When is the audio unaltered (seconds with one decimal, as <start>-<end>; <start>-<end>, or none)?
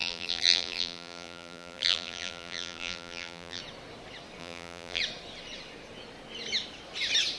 3.6-4.4; 5.0-7.4